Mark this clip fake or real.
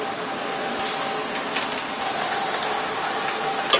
real